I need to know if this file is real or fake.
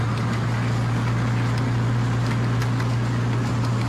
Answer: real